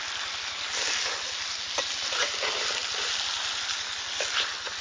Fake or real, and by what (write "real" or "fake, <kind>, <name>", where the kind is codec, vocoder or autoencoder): real